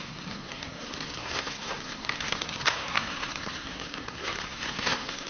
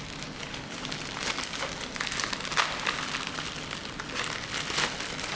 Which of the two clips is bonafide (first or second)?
second